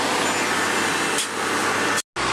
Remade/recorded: recorded